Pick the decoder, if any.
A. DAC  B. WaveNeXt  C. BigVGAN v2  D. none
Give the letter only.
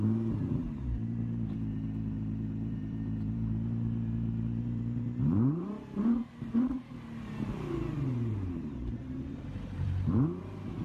C